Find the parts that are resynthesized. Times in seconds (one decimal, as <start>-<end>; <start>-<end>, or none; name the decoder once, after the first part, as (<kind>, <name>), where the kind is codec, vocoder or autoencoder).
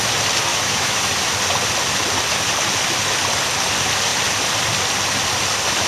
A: 0.5-1.1 (autoencoder, DAC-VAE)